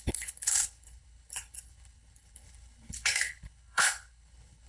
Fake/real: fake